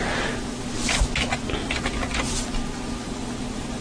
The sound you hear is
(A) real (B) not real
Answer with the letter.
A